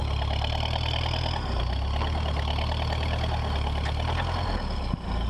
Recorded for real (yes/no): yes